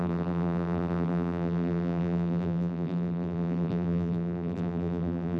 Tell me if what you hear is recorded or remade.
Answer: remade